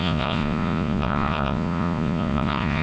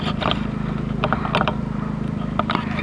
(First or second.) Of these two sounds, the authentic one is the second